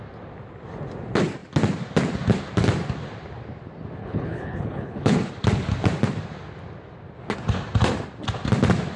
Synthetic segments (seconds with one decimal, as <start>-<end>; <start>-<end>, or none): 4.0-5.3